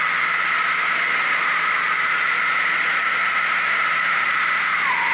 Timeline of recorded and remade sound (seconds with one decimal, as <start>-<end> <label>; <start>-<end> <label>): 0.0-1.2 recorded; 1.2-4.3 remade; 4.3-5.1 recorded